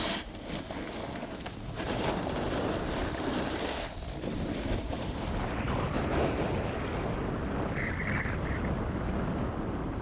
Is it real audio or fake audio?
real